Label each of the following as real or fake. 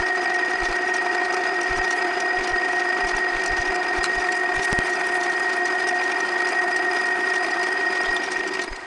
fake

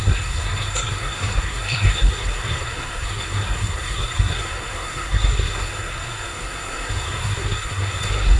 fake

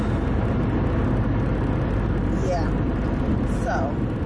real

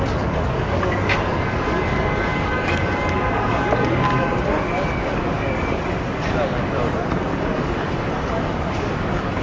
fake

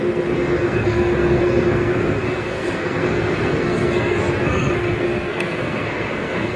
fake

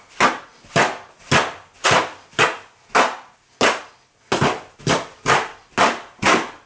real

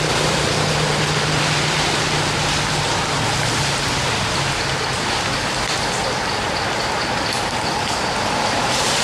real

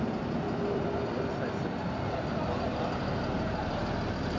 real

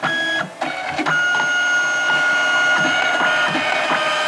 real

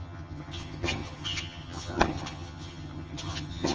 fake